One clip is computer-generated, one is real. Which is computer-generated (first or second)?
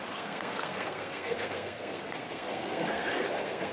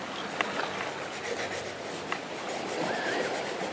first